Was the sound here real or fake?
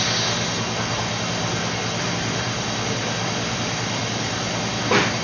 real